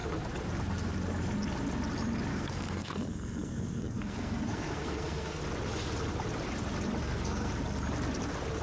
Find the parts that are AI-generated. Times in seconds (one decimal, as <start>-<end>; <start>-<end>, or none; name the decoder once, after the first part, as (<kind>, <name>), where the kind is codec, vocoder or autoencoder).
2.3-5.4 (codec, SNAC); 7.0-7.5